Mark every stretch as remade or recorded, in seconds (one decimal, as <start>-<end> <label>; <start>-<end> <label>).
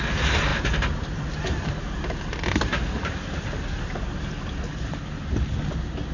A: 0.0-6.1 recorded